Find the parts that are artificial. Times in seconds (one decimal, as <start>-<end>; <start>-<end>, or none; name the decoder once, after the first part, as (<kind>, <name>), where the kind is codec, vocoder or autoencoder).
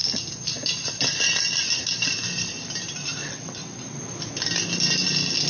3.2-4.0 (vocoder, WaveNeXt)